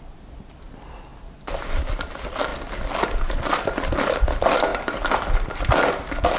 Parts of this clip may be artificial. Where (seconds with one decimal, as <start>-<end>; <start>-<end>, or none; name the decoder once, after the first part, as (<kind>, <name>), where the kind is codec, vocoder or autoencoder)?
none